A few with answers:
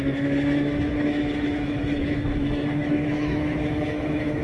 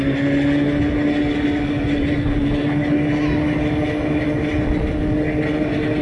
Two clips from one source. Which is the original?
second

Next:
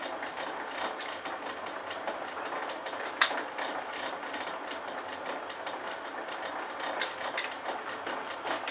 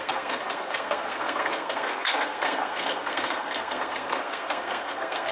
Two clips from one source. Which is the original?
first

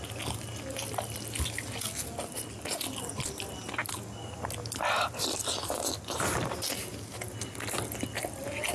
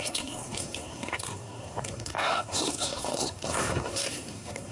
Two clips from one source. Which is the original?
first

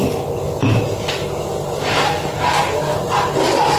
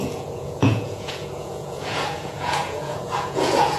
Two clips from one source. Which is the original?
first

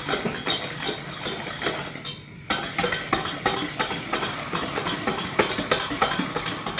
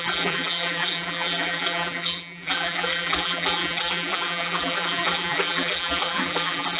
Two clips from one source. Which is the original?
first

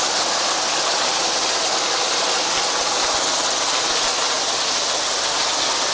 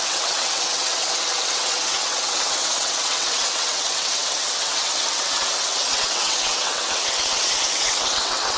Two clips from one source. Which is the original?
first